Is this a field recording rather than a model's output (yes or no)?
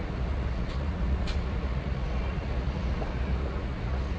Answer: no